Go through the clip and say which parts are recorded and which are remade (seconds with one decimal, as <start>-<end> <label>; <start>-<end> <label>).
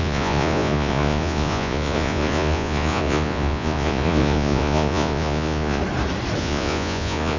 0.0-5.8 remade; 5.8-6.4 recorded; 6.4-7.4 remade